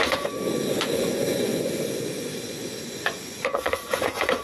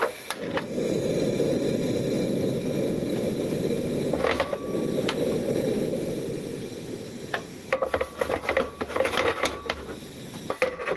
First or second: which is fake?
first